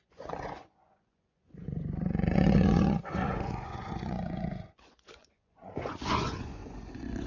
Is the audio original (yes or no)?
no